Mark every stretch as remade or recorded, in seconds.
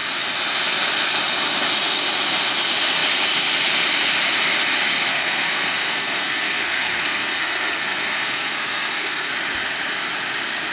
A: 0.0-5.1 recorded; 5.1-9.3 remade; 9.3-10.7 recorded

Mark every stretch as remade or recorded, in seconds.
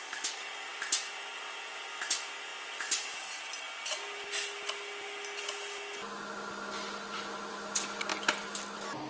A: 0.0-9.1 recorded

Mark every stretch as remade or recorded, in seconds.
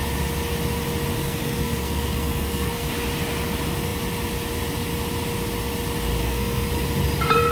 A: 0.0-1.2 recorded; 1.2-2.9 remade; 2.9-6.2 recorded; 6.2-6.7 remade; 6.7-7.5 recorded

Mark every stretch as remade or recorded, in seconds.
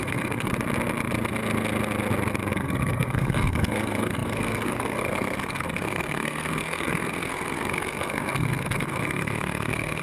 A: 0.0-0.5 remade; 0.5-2.5 recorded; 2.5-10.0 remade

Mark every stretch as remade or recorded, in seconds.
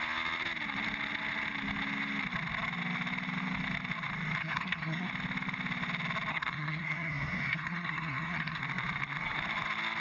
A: 0.0-4.4 recorded; 4.4-5.1 remade; 5.1-6.3 recorded; 6.3-8.6 remade; 8.6-10.0 recorded